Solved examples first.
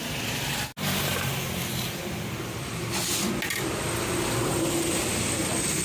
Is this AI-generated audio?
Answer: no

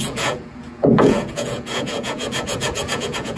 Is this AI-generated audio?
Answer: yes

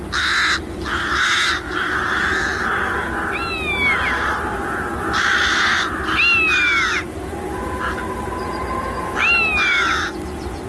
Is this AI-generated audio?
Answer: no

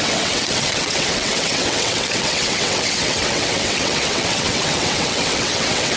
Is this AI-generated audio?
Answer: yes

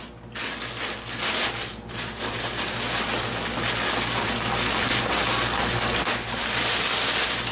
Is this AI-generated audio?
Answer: no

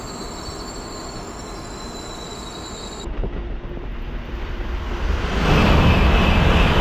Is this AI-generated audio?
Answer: no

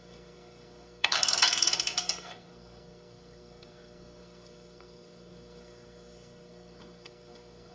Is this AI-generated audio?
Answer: yes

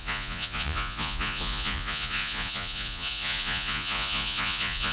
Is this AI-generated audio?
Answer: yes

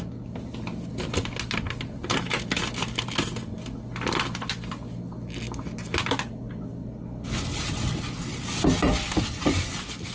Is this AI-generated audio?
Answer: no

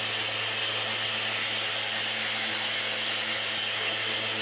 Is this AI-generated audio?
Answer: no